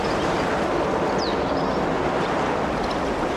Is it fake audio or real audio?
real